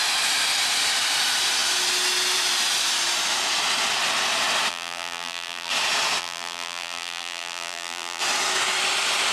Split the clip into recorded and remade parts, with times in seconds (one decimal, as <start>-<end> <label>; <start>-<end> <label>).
0.0-4.7 recorded; 4.7-5.7 remade; 5.7-6.2 recorded; 6.2-8.2 remade; 8.2-9.3 recorded

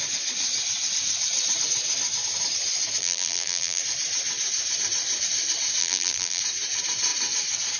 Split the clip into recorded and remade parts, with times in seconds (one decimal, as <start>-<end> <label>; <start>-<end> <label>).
0.0-3.0 recorded; 3.0-3.8 remade; 3.8-5.8 recorded; 5.8-6.4 remade; 6.4-7.8 recorded

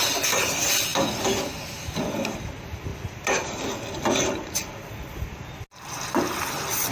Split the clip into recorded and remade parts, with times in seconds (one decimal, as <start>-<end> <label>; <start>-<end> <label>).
0.0-6.9 recorded

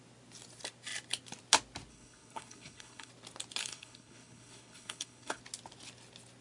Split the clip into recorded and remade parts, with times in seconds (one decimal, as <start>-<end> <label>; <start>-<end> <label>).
0.0-1.9 recorded; 1.9-3.1 remade; 3.1-3.6 recorded; 3.6-5.4 remade; 5.4-6.4 recorded

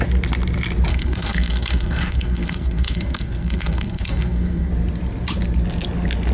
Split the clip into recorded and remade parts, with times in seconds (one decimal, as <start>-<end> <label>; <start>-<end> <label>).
0.0-0.9 recorded; 0.9-4.7 remade; 4.7-6.3 recorded

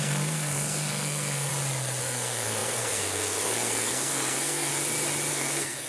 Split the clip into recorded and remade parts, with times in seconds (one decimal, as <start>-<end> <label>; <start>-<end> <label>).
0.0-1.5 remade; 1.5-2.0 recorded; 2.0-4.7 remade; 4.7-5.3 recorded; 5.3-5.9 remade

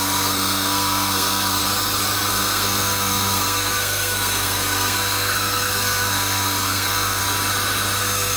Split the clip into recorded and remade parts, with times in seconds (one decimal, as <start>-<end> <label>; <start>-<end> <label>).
0.0-1.6 remade; 1.6-2.3 recorded; 2.3-7.2 remade; 7.2-8.0 recorded; 8.0-8.4 remade